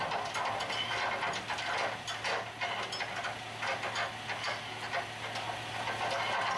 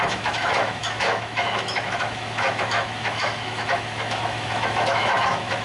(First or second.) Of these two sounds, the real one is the first